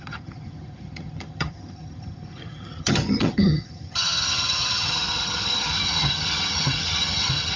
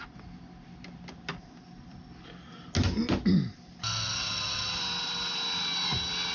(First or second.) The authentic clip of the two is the second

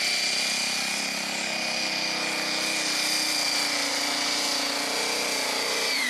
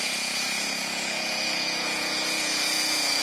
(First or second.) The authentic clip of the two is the first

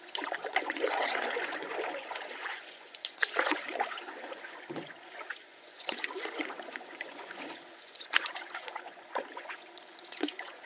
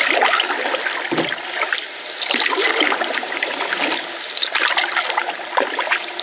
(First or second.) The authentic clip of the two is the second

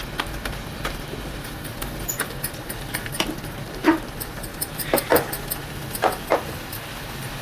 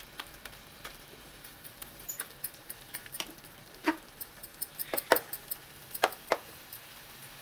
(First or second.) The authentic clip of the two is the first